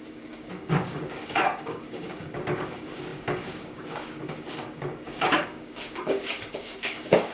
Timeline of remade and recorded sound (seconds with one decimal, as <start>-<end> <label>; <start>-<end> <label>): 0.0-7.3 remade